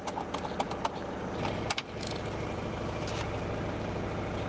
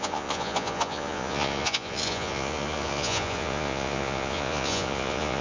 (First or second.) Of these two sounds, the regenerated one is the second